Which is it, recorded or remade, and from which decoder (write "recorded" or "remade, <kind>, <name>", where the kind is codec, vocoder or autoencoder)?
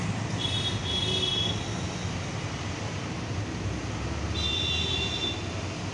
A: recorded